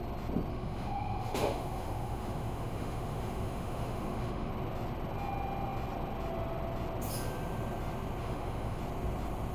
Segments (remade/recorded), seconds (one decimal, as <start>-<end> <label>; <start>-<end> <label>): 0.0-0.5 recorded; 0.5-4.5 remade; 4.5-8.2 recorded; 8.2-8.8 remade; 8.8-9.5 recorded